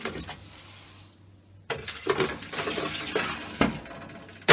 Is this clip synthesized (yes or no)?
no